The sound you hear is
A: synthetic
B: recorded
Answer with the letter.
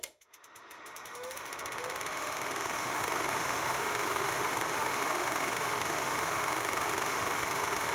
A